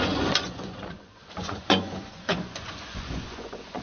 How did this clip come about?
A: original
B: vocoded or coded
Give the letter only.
B